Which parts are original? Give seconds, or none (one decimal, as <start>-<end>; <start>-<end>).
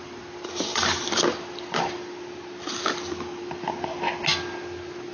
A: 0.0-5.1